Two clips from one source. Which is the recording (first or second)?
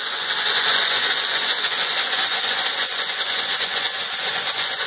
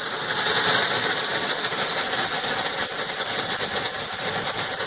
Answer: second